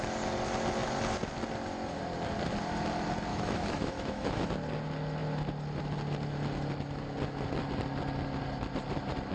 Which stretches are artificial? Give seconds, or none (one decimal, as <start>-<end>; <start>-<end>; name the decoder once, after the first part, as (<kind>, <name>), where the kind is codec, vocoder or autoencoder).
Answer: 3.3-4.5 (autoencoder, DAC-VAE)